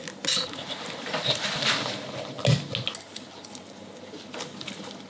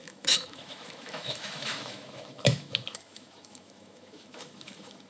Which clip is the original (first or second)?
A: first